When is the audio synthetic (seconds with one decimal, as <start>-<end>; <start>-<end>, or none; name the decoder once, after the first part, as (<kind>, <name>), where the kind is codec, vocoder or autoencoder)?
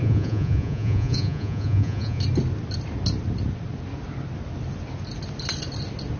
0.0-2.2 (vocoder, Vocos)